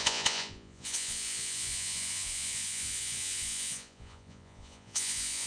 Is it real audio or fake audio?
fake